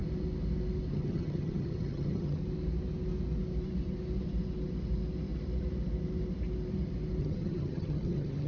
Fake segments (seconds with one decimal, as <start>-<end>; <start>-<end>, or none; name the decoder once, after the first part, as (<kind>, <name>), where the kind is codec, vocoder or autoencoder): 0.9-2.4 (vocoder, HiFi-GAN); 7.2-8.5